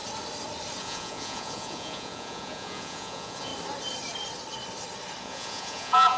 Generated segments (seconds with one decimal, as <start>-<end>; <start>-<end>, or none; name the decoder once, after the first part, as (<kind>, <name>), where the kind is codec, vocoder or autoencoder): 0.8-3.5 (vocoder, Vocos); 5.2-6.2